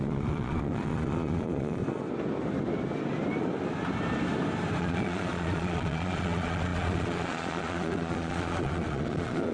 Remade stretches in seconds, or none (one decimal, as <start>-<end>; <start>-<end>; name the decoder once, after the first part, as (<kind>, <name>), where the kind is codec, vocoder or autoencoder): 0.0-1.8 (vocoder, Vocos); 4.8-9.5